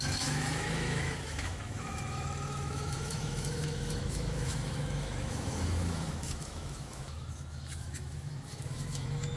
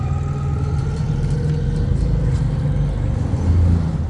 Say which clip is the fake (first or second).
first